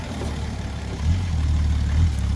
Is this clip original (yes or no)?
no